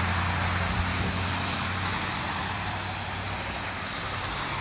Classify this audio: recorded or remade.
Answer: recorded